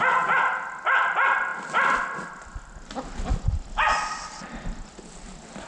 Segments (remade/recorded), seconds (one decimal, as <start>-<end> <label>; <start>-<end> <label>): 0.0-5.7 recorded